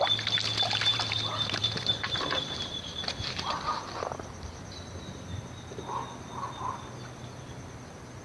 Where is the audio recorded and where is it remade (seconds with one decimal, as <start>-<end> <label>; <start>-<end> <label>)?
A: 0.0-0.9 recorded; 0.9-5.8 remade; 5.8-8.2 recorded